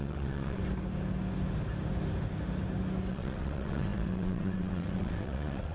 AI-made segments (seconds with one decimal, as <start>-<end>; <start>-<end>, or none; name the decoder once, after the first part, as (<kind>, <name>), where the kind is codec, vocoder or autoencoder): 0.0-0.6 (vocoder, WaveNeXt); 3.1-5.7